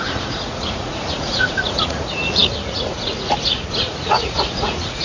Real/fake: fake